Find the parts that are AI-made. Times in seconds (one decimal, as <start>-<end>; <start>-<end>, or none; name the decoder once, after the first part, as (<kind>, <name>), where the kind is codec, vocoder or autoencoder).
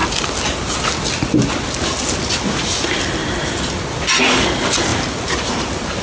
none